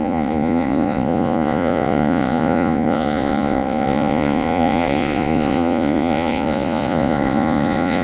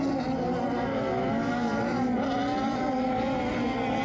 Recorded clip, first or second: second